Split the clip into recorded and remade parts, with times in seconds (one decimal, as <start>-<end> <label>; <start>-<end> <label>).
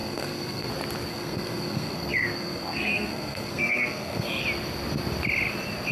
0.0-0.7 remade; 0.7-1.1 recorded; 1.1-4.4 remade; 4.4-5.9 recorded